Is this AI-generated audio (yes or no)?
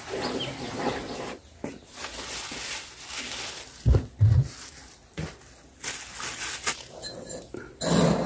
no